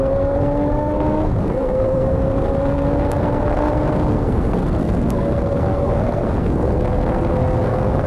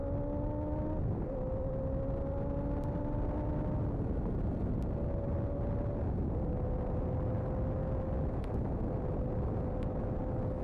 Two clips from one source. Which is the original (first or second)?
second